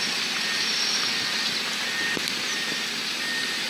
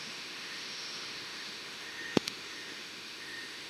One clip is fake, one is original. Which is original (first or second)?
first